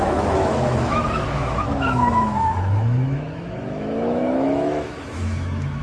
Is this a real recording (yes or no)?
no